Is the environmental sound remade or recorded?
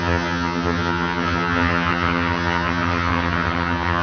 remade